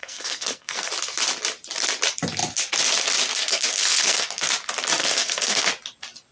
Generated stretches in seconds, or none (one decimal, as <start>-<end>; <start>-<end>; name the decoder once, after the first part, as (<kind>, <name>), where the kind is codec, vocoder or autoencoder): 0.0-0.9 (codec, SNAC); 3.4-4.5; 5.0-5.7